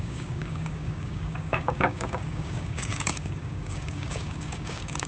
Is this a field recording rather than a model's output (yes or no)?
no